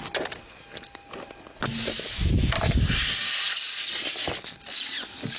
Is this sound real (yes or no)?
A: yes